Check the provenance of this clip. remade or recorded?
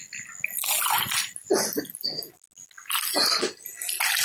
recorded